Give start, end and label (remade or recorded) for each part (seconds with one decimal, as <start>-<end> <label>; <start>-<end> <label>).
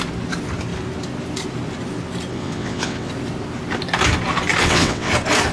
0.0-2.3 recorded; 2.3-3.1 remade; 3.1-4.6 recorded; 4.6-5.1 remade; 5.1-5.5 recorded